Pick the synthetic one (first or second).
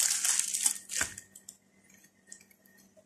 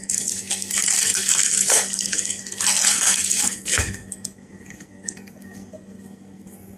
second